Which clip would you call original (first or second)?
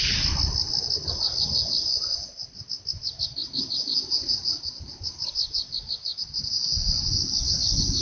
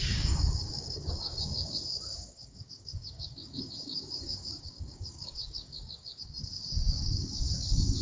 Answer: first